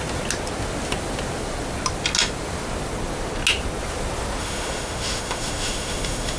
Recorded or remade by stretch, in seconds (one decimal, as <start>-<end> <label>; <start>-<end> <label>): 0.0-4.4 recorded; 4.4-6.4 remade